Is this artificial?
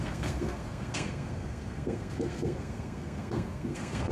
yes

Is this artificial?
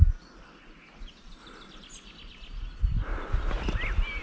no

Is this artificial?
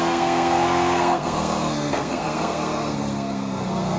yes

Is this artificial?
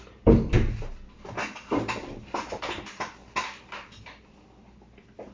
no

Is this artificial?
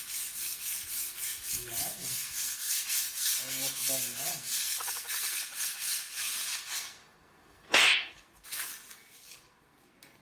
yes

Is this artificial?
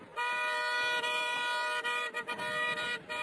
no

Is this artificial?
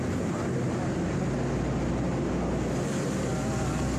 no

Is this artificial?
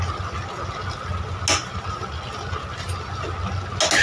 no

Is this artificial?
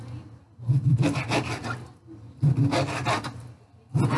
no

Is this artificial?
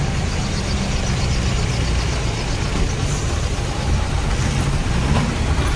no